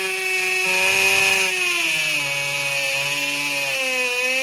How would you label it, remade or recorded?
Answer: recorded